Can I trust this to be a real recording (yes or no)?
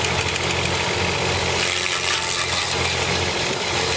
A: yes